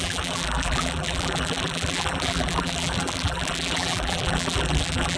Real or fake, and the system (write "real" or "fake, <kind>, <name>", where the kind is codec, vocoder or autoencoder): fake, vocoder, BigVGAN v2